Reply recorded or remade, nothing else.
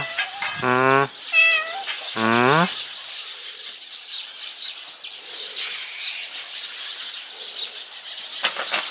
recorded